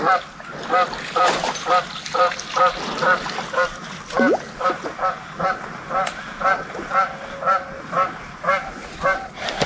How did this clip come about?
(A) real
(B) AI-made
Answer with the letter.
A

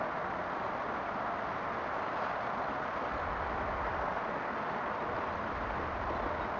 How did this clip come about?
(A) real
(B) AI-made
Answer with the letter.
A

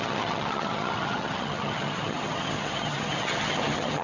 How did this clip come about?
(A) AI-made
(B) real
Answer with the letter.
A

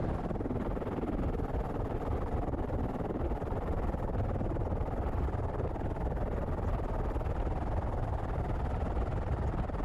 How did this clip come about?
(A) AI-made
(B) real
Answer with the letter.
B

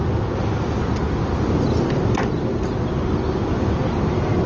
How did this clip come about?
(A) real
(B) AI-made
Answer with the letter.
A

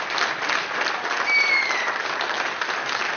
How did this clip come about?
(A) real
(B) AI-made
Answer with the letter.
A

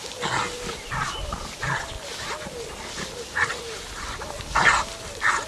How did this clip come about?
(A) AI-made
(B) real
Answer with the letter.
B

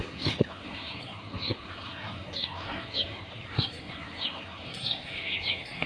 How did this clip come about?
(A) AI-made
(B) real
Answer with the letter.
A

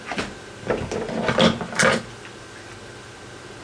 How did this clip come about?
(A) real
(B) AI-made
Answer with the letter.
A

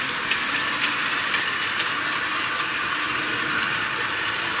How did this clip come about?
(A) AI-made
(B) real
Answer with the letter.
B